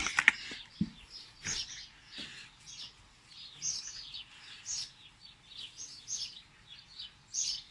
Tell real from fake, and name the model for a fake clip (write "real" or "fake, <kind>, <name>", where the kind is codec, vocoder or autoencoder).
real